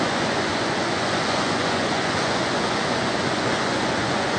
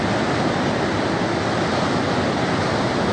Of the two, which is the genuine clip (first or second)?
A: second